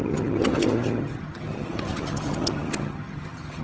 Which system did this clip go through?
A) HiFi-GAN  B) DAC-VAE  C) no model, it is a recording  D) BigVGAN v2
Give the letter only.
A